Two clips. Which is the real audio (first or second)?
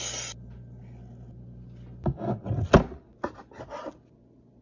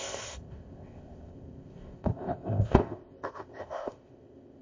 first